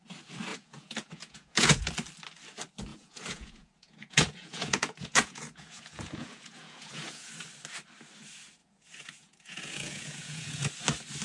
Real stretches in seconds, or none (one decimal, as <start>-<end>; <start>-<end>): 0.0-0.5; 1.9-2.9; 7.3-8.6; 10.7-11.2